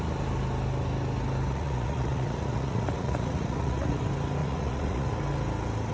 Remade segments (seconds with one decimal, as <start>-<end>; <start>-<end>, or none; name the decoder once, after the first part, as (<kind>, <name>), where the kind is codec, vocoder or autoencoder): 1.5-4.0 (vocoder, Vocos); 4.4-5.1